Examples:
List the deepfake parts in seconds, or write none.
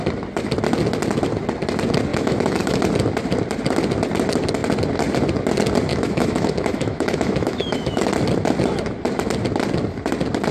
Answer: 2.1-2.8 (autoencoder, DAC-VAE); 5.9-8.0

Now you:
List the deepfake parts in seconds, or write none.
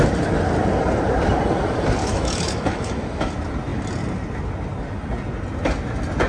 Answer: 2.0-3.3 (autoencoder, DAC-VAE)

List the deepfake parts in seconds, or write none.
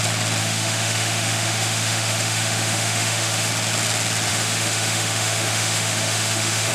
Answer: 0.4-3.5 (autoencoder, DAC-VAE); 4.3-6.7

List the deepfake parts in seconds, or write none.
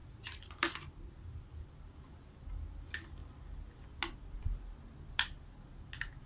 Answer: none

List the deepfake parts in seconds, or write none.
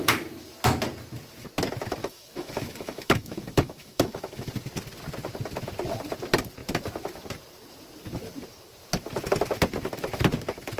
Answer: 2.0-4.5 (autoencoder, DAC-VAE)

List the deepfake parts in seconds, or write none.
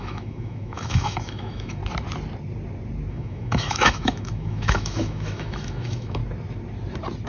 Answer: 0.0-1.8 (autoencoder, DAC-VAE); 3.1-6.2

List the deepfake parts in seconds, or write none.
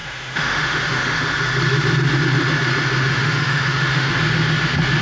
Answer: 0.0-1.2 (autoencoder, DAC-VAE); 3.2-4.1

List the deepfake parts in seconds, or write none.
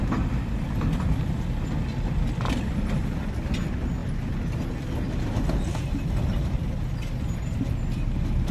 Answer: none